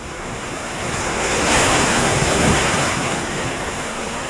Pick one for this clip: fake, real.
fake